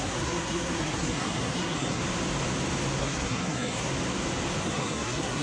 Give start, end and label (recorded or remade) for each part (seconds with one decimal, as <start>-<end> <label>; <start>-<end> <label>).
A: 0.0-2.0 remade; 2.0-3.0 recorded; 3.0-3.9 remade; 3.9-4.6 recorded; 4.6-5.4 remade